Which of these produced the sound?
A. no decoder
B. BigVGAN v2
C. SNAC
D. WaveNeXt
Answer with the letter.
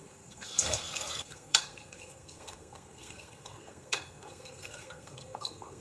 C